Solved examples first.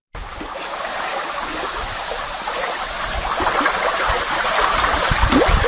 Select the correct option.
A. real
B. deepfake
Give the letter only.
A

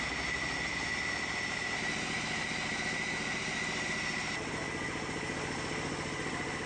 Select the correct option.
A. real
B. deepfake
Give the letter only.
A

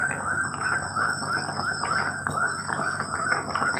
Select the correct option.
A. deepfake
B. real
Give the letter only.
A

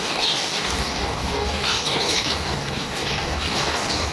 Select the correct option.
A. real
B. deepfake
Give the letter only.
B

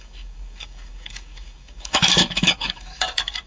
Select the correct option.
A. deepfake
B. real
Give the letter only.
A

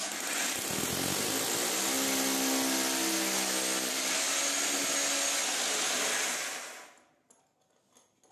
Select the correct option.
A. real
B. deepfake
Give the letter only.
A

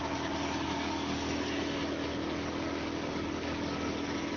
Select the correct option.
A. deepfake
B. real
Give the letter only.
A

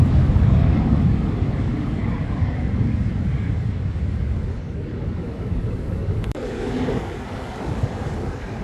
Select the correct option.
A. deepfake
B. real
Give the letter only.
A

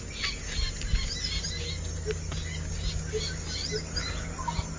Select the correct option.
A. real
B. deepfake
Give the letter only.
A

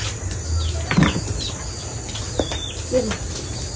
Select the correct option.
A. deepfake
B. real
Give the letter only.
B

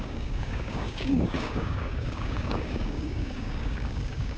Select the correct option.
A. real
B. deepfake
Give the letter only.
B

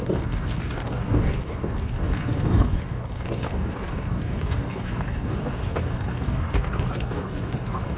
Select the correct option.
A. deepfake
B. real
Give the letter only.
A